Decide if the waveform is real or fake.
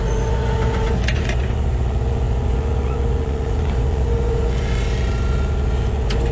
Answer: fake